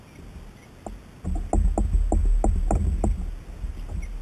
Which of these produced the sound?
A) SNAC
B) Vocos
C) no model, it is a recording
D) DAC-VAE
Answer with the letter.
C